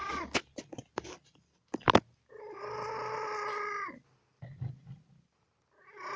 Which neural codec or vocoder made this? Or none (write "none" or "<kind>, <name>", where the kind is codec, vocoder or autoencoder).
none